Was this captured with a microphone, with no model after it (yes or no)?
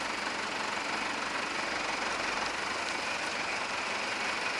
yes